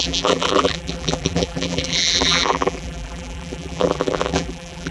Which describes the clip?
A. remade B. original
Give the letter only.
A